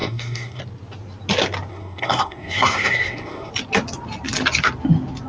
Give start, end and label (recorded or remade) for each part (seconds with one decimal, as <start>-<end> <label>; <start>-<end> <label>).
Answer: 0.0-0.6 remade; 0.6-1.7 recorded; 1.7-3.5 remade; 3.5-5.3 recorded